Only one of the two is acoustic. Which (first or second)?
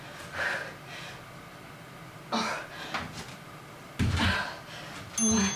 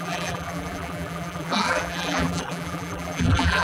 first